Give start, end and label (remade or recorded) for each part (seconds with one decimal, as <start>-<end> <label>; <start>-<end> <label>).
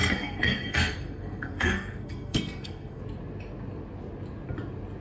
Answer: 0.0-3.0 remade; 3.0-5.0 recorded